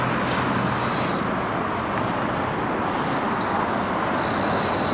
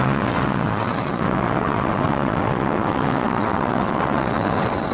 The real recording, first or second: first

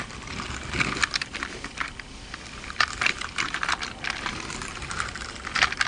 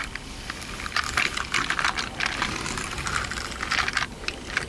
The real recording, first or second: second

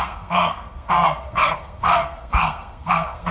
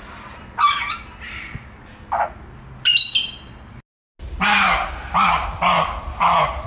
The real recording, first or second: second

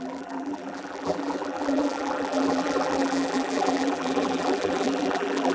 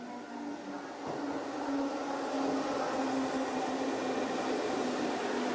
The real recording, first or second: second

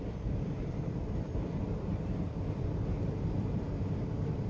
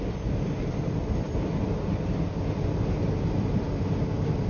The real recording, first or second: second